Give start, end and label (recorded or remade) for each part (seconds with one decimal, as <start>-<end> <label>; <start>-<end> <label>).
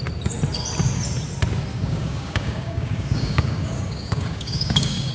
0.0-1.7 recorded; 1.7-5.1 remade